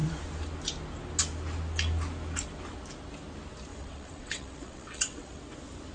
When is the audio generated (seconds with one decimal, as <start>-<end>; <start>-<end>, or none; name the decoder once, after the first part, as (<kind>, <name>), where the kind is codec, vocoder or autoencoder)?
3.7-5.4 (vocoder, WaveNeXt)